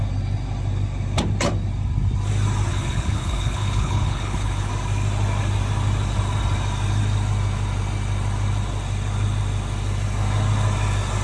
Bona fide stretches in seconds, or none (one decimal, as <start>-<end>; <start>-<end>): 0.0-2.7; 4.7-11.2